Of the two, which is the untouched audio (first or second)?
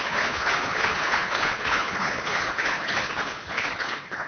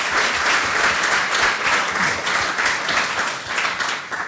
second